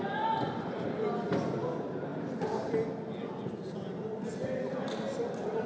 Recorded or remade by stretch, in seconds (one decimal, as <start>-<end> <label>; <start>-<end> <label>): 0.0-5.7 recorded